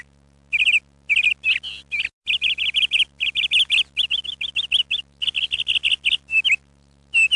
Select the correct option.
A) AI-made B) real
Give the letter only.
B